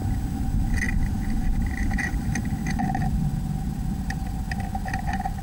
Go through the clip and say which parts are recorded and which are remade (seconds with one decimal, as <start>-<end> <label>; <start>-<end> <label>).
0.0-0.8 recorded; 0.8-2.1 remade; 2.1-5.4 recorded